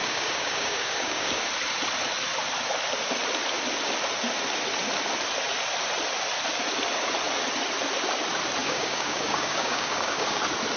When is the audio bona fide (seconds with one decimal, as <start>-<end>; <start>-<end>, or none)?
1.4-8.6; 10.4-10.8